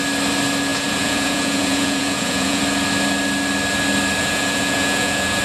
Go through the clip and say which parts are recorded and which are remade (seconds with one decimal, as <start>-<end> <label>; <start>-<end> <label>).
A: 0.0-0.7 recorded; 0.7-2.6 remade; 2.6-4.2 recorded; 4.2-5.4 remade